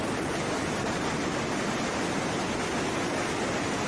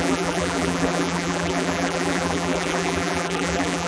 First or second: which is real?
first